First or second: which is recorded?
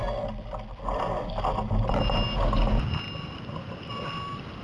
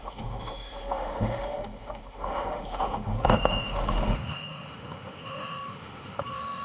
first